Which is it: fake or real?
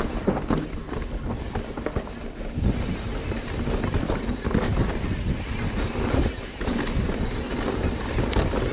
real